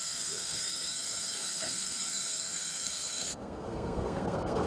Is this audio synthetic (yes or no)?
yes